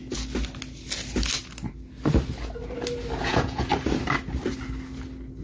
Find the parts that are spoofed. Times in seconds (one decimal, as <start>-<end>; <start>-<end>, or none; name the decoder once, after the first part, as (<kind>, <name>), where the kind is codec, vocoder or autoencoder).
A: 3.2-3.7 (vocoder, Vocos)